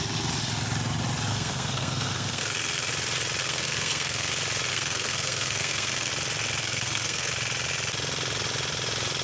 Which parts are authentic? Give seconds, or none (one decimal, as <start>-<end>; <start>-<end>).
0.0-1.3; 2.9-3.4; 4.3-4.7; 6.1-6.6; 7.3-9.2